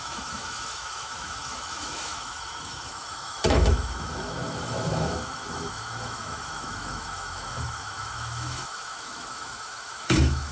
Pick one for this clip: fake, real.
fake